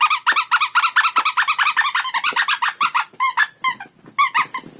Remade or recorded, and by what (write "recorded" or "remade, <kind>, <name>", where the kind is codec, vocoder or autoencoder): recorded